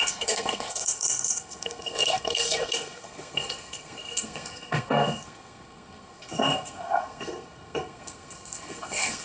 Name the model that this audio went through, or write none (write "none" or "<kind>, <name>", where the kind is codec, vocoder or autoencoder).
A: codec, SNAC